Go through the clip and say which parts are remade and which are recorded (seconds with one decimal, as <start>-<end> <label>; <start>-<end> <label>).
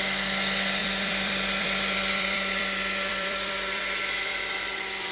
0.0-0.8 recorded; 0.8-3.8 remade; 3.8-5.1 recorded